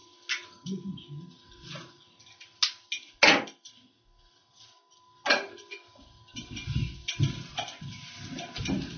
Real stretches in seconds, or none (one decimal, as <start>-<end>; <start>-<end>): 0.0-9.0